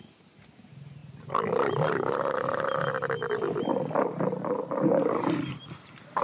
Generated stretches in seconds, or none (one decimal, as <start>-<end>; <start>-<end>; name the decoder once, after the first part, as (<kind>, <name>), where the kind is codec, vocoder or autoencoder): none